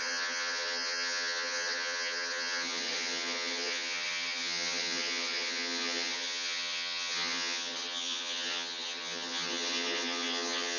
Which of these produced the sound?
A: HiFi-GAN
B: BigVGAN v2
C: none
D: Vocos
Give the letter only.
A